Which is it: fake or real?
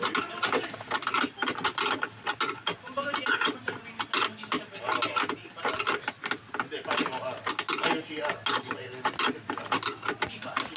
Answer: real